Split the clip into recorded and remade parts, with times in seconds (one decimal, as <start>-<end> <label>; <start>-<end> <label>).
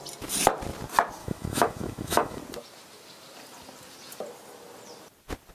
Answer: 0.0-1.2 recorded; 1.2-2.4 remade; 2.4-5.5 recorded